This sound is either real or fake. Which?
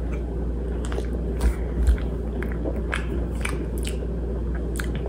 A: real